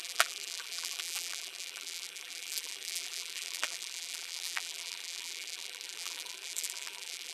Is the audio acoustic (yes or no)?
no